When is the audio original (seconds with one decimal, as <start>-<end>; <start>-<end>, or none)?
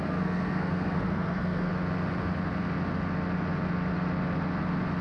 1.7-5.0